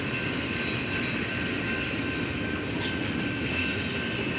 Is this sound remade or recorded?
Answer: recorded